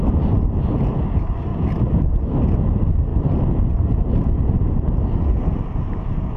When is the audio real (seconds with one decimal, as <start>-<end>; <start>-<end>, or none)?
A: 0.0-1.5; 2.0-3.1; 4.6-6.4